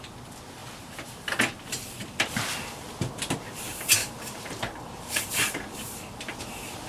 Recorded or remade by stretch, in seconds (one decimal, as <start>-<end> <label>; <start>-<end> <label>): 0.0-4.0 recorded; 4.0-6.2 remade; 6.2-6.9 recorded